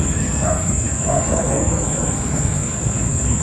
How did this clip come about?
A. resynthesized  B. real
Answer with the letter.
A